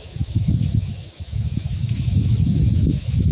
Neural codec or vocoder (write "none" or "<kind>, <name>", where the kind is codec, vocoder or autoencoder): autoencoder, DAC-VAE